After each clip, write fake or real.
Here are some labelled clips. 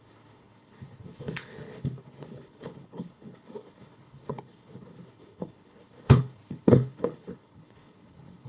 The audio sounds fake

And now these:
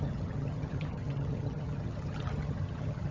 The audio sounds fake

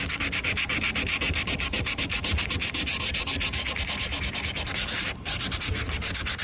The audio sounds real